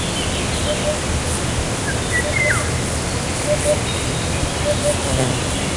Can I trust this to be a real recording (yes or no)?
yes